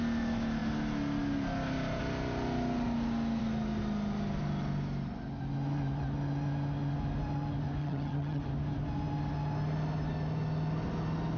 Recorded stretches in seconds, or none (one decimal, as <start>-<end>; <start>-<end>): 0.0-7.8; 8.4-11.4